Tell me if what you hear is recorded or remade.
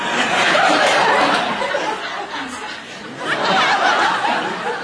recorded